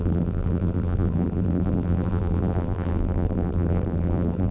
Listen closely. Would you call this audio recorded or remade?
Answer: remade